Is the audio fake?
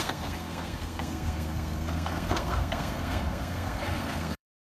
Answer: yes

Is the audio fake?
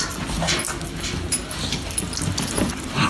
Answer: yes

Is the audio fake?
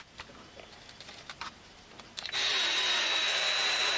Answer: yes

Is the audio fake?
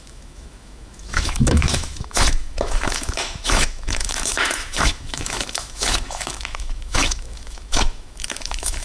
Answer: yes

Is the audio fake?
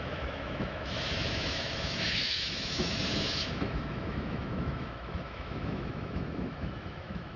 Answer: yes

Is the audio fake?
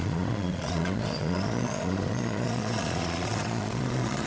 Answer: yes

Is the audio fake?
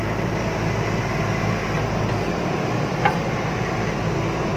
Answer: no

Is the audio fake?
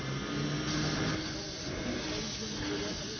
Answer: no